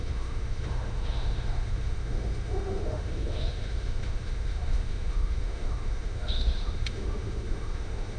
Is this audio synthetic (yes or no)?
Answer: yes